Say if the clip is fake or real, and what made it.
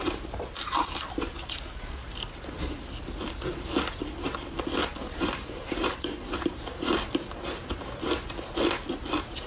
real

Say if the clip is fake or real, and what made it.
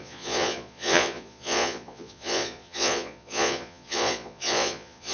fake, vocoder, Vocos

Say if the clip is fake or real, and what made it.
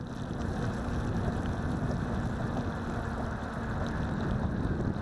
real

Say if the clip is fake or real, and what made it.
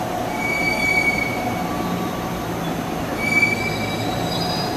real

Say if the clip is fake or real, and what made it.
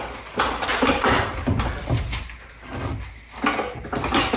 real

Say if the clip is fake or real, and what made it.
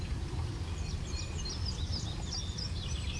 fake, vocoder, BigVGAN v2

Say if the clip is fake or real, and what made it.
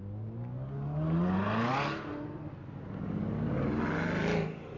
real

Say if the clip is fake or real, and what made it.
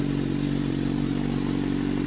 real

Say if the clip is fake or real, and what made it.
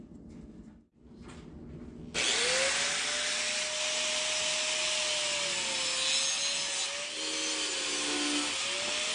real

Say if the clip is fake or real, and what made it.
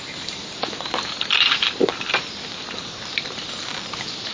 real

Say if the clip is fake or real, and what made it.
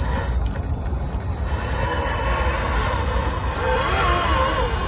real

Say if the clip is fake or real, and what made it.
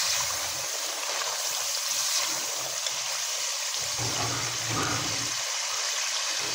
fake, vocoder, BigVGAN v2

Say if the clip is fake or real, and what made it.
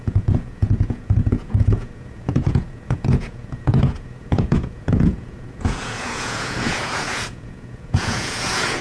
fake, vocoder, Vocos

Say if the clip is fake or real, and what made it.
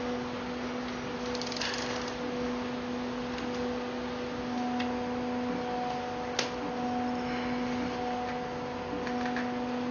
real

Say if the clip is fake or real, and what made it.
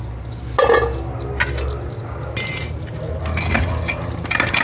real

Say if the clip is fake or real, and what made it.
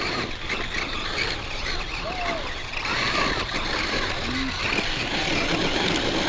real